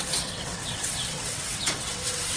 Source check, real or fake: fake